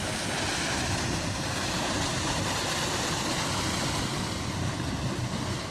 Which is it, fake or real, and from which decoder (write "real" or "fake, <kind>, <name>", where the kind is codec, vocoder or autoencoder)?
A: real